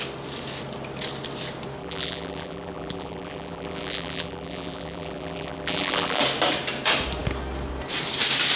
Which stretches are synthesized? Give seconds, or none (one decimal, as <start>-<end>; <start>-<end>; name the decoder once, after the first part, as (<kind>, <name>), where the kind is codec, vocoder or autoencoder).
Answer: 1.8-6.2 (vocoder, BigVGAN v2)